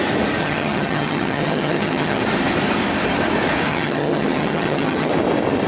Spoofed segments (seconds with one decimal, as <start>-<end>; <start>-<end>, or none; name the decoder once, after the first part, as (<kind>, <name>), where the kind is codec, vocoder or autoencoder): 0.4-2.2 (vocoder, HiFi-GAN); 3.7-5.1